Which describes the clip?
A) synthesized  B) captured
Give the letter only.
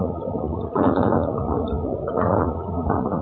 A